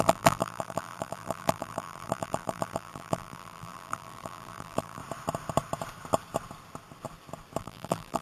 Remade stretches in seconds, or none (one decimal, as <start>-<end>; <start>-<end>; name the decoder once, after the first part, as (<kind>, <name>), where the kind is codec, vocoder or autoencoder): 0.0-5.0 (vocoder, BigVGAN v2); 7.6-8.2

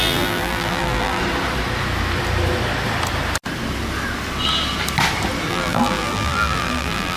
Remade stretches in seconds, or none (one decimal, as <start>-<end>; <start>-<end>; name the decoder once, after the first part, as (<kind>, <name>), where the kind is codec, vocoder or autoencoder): 0.0-1.2 (vocoder, BigVGAN v2); 5.5-7.2

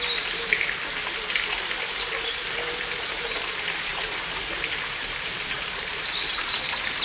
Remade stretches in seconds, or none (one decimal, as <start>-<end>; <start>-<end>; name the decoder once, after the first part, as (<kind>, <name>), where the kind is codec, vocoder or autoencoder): 3.9-6.4 (vocoder, BigVGAN v2)

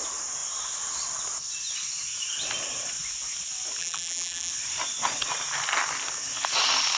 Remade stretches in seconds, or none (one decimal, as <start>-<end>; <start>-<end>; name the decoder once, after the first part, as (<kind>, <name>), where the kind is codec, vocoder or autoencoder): 3.8-4.5 (vocoder, BigVGAN v2)

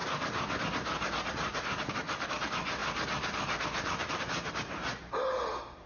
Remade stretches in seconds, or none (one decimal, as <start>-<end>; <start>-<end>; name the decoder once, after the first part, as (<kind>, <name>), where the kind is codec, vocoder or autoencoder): 2.8-4.2 (vocoder, BigVGAN v2)

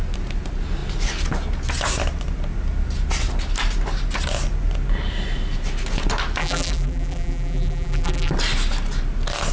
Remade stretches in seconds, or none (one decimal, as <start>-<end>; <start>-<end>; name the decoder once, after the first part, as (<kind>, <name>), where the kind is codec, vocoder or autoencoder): 6.4-8.3 (vocoder, BigVGAN v2)

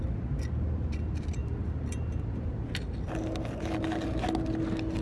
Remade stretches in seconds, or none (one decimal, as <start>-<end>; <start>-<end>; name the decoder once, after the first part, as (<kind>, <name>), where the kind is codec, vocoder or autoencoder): 1.4-2.7 (vocoder, BigVGAN v2)

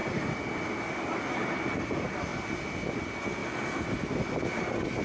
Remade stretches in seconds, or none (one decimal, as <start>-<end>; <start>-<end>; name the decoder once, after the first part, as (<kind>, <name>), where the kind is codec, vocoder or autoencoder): 1.3-2.3 (vocoder, BigVGAN v2); 2.9-3.4; 4.6-5.0